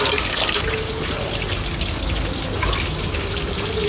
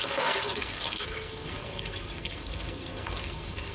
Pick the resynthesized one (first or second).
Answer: second